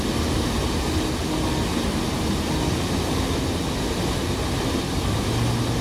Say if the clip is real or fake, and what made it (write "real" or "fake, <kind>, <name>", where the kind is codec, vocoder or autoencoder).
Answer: real